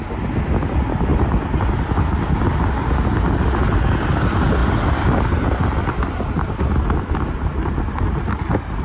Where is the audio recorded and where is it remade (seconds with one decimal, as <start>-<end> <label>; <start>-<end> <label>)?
0.0-8.8 recorded